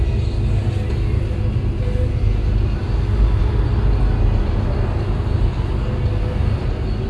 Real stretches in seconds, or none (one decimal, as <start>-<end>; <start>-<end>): 0.0-7.1